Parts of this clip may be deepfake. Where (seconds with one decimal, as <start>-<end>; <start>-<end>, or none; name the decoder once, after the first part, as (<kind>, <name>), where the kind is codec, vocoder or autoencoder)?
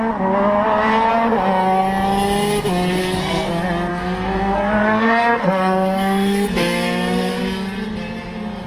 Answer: 3.0-3.5 (codec, SNAC); 3.9-7.4